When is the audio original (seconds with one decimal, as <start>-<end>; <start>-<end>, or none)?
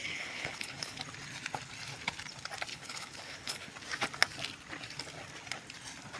1.0-2.7; 3.7-6.2